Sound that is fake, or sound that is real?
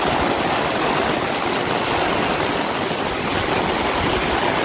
real